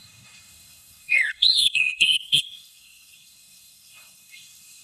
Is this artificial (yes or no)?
yes